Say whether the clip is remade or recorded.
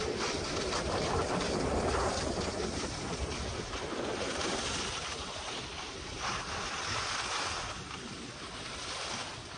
recorded